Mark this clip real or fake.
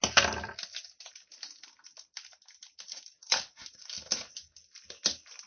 real